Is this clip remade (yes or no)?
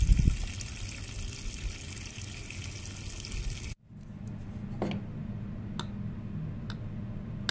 no